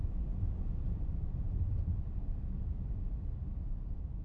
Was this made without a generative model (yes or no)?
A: yes